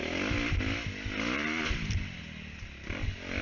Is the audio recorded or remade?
recorded